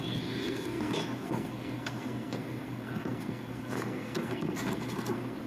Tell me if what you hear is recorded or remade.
remade